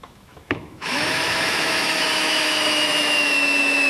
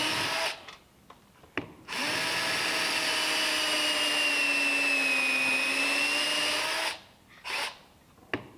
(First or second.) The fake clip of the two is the first